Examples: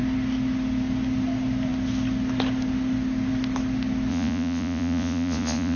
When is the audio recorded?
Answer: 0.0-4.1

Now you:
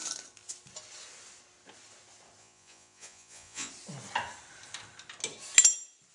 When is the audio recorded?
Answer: 0.0-2.4; 3.7-6.1